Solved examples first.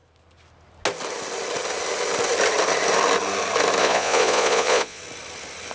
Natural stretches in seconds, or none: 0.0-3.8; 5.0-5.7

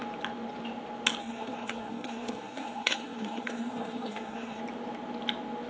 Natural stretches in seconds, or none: 0.0-1.2; 4.6-5.7

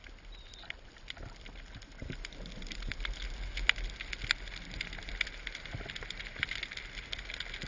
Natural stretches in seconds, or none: 0.0-7.7

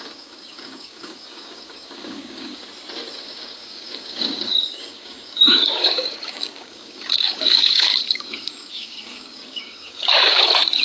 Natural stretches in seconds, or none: 2.6-3.1

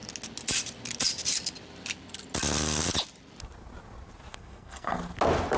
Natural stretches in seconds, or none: 0.0-4.3; 5.0-5.6

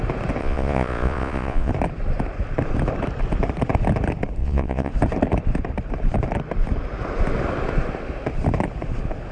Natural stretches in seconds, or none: 0.0-0.4; 1.7-4.4; 4.9-9.3

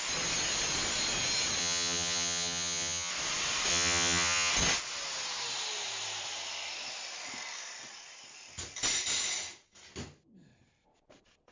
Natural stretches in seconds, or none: 0.0-1.6; 3.1-3.7; 4.5-11.5